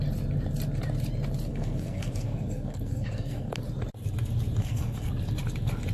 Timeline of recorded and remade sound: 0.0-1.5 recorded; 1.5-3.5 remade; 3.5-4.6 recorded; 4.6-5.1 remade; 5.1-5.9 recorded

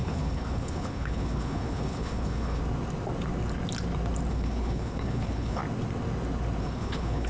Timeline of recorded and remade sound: 0.0-2.6 remade; 2.6-4.3 recorded; 4.3-5.6 remade; 5.6-6.6 recorded; 6.6-7.3 remade

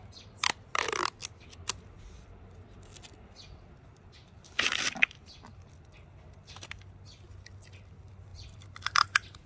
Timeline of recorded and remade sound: 0.0-4.2 recorded; 4.2-5.1 remade; 5.1-8.3 recorded; 8.3-9.5 remade

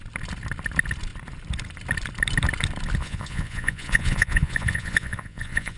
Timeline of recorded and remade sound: 0.0-3.0 recorded; 3.0-5.8 remade

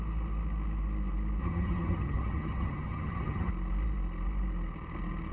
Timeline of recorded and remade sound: 0.0-1.4 recorded; 1.4-3.5 remade; 3.5-5.3 recorded

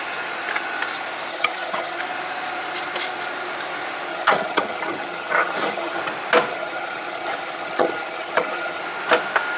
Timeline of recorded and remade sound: 0.0-1.3 recorded; 1.3-2.0 remade; 2.0-4.1 recorded; 4.1-6.0 remade; 6.0-6.5 recorded; 6.5-8.8 remade; 8.8-9.6 recorded